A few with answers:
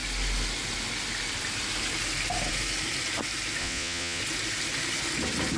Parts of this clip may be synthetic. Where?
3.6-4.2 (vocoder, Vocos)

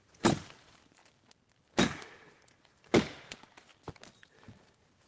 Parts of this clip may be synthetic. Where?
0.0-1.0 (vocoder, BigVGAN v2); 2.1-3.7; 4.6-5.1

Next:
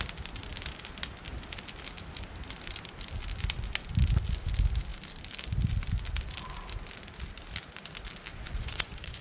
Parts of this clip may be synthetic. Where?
8.3-9.2 (vocoder, Vocos)